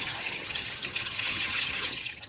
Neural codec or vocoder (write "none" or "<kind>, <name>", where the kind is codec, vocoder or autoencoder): vocoder, HiFi-GAN